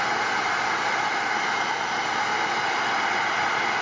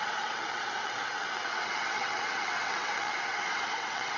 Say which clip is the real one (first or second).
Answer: first